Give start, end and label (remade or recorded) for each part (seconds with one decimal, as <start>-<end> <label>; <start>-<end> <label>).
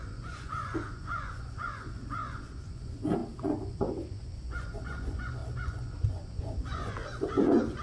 0.0-7.8 remade